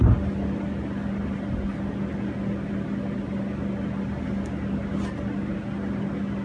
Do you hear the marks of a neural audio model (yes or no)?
no